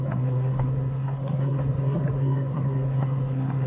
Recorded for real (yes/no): no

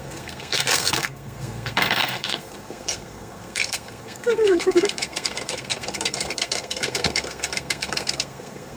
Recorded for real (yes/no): no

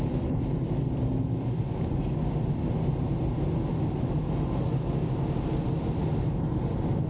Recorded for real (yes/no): yes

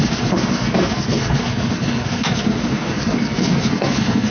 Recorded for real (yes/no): no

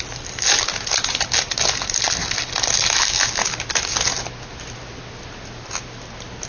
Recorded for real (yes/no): yes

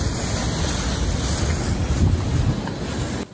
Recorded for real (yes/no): yes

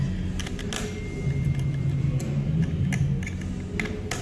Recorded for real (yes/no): yes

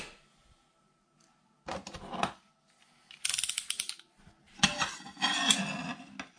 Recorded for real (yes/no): yes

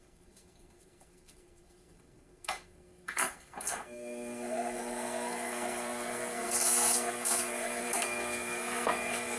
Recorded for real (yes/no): no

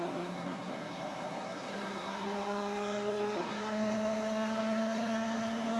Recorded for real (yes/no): no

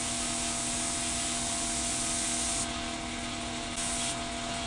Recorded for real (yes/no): yes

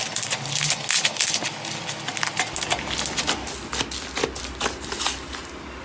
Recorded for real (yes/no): yes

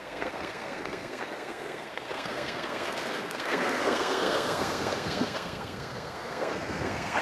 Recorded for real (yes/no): no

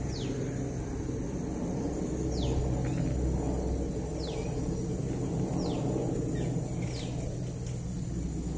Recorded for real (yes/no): yes